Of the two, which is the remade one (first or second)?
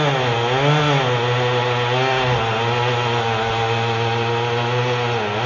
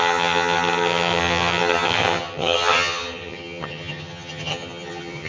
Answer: second